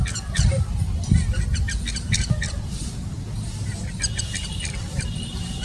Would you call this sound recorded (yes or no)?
yes